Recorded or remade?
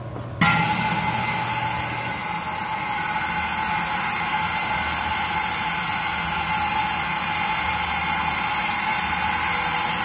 recorded